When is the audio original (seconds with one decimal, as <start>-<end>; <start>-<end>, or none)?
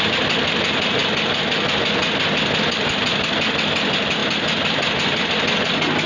0.0-4.2; 5.3-6.1